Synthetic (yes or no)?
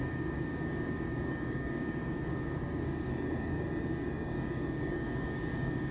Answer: yes